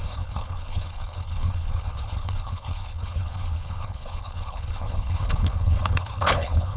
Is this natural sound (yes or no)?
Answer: no